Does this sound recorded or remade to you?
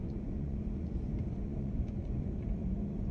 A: remade